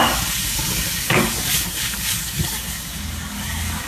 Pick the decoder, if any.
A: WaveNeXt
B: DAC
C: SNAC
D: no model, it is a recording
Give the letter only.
B